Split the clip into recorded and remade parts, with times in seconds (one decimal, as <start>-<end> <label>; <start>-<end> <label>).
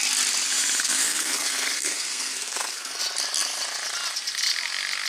0.0-0.8 recorded; 0.8-3.0 remade; 3.0-5.1 recorded